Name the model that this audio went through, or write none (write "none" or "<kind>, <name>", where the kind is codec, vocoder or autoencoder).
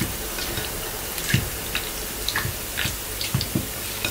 none